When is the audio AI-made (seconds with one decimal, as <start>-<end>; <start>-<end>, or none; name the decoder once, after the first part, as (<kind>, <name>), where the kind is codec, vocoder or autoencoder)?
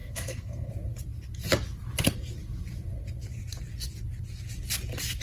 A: 0.0-0.7 (codec, SNAC)